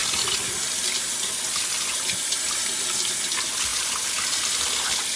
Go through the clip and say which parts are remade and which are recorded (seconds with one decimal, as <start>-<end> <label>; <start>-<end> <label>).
0.0-5.2 recorded